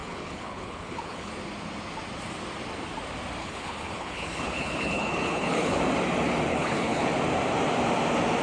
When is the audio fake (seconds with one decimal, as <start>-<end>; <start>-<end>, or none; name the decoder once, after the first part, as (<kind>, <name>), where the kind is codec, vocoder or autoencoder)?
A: 0.0-1.3 (codec, HILCodec); 3.4-5.8; 6.5-7.1